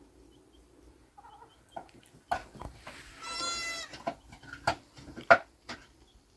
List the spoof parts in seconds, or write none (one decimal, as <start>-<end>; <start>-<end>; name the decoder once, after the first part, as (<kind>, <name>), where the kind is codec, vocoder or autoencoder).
none